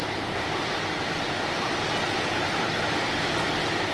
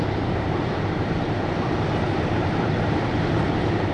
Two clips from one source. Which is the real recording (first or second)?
first